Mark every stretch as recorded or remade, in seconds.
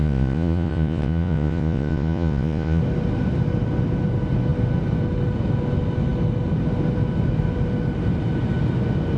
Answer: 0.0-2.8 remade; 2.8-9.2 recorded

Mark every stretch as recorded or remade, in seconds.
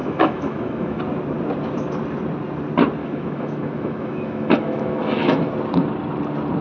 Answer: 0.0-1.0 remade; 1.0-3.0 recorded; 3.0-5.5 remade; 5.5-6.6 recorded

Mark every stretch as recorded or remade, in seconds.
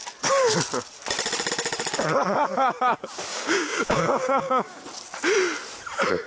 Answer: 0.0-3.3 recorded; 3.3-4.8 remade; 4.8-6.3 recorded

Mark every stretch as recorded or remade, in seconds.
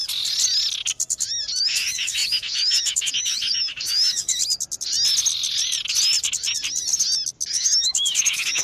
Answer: 0.0-1.6 recorded; 1.6-4.4 remade; 4.4-7.5 recorded; 7.5-8.6 remade